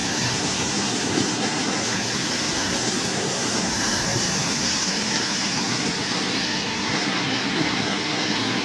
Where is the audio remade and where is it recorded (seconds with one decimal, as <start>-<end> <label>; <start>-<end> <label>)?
0.0-8.6 remade